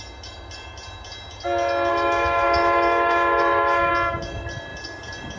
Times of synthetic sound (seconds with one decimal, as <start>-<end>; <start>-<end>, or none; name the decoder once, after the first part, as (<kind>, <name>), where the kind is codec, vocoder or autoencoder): 1.9-3.9 (autoencoder, DAC-VAE)